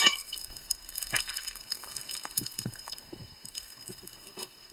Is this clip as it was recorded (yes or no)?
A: no